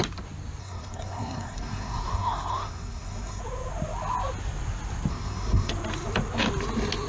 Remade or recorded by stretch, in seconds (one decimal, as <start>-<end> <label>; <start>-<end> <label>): 0.0-0.6 recorded; 0.6-3.4 remade; 3.4-5.1 recorded; 5.1-5.7 remade; 5.7-7.1 recorded